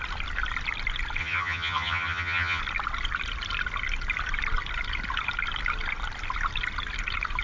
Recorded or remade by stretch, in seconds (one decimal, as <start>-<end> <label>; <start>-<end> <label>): 0.0-1.2 recorded; 1.2-2.6 remade; 2.6-7.4 recorded